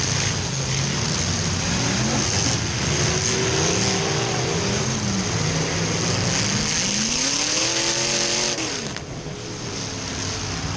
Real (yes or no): yes